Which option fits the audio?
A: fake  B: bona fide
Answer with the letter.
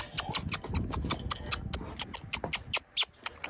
B